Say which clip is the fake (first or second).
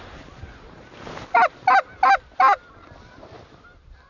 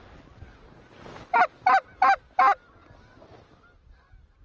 first